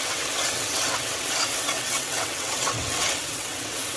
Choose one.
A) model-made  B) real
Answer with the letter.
A